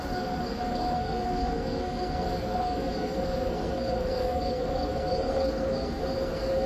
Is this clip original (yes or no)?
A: no